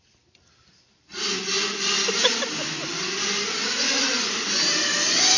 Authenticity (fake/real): real